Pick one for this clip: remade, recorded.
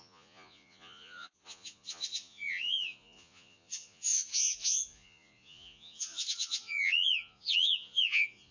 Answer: remade